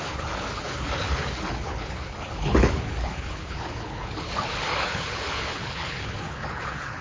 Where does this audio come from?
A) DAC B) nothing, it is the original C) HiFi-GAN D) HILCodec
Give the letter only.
D